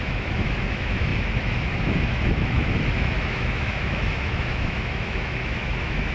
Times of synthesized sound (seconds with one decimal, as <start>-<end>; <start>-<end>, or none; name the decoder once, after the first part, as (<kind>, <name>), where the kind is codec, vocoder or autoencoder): 0.0-6.1 (autoencoder, DAC-VAE)